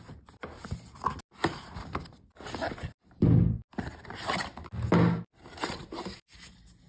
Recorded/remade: recorded